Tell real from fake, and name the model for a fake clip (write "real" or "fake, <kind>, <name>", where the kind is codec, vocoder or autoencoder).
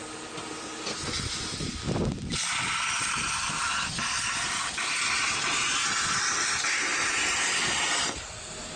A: real